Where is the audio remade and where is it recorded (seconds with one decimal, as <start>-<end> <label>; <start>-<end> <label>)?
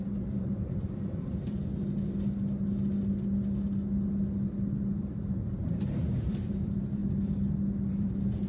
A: 0.0-1.6 remade; 1.6-5.0 recorded; 5.0-7.0 remade; 7.0-7.9 recorded; 7.9-8.5 remade